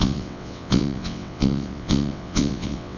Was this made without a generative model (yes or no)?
no